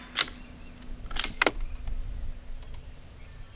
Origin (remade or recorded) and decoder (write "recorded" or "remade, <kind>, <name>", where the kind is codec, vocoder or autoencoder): recorded